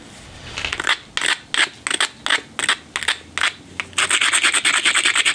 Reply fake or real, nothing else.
real